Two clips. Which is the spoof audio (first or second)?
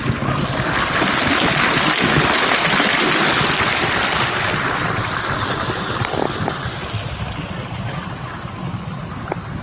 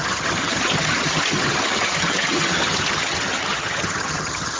second